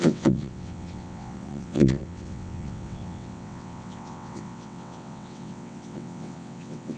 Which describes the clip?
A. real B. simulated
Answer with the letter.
B